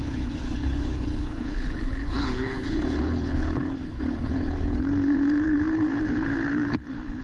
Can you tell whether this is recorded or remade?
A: remade